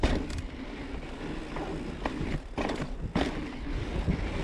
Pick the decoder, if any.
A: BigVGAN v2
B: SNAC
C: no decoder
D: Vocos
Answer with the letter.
C